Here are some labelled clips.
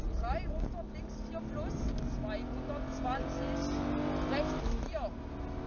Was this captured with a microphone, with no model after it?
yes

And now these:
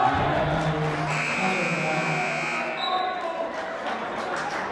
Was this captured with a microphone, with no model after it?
yes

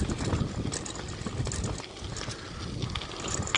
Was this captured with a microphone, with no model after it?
yes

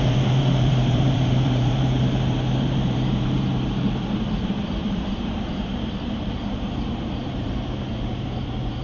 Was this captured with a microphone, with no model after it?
no